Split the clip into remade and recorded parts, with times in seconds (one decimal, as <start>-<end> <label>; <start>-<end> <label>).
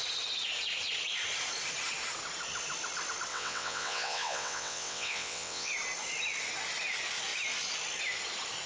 0.0-3.3 recorded; 3.3-5.7 remade; 5.7-8.7 recorded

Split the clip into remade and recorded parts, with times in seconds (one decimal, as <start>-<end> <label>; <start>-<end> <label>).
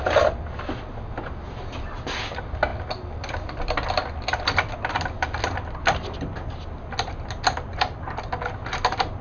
0.0-9.2 recorded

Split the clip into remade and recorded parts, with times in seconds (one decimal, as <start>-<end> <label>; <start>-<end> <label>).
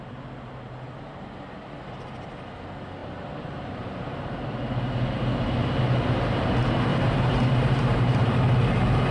0.0-3.0 recorded; 3.0-4.6 remade; 4.6-6.9 recorded; 6.9-8.3 remade; 8.3-9.1 recorded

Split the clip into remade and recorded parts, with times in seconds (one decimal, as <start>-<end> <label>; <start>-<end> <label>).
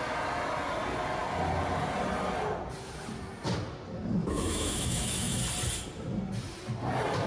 0.0-4.2 recorded; 4.2-5.4 remade; 5.4-7.3 recorded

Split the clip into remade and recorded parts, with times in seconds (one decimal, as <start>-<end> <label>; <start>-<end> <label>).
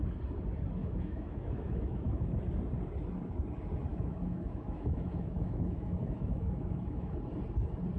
0.0-0.8 recorded; 0.8-2.4 remade; 2.4-3.9 recorded; 3.9-7.1 remade; 7.1-8.0 recorded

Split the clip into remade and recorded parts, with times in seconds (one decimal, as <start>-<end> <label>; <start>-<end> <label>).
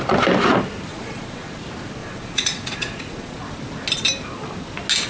0.0-0.9 recorded; 0.9-1.6 remade; 1.6-2.0 recorded; 2.0-3.4 remade; 3.4-5.1 recorded